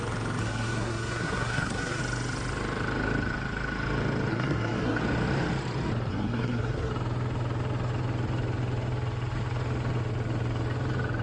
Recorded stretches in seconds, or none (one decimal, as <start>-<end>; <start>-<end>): 0.0-0.4; 2.0-4.3; 5.0-6.1; 6.9-11.2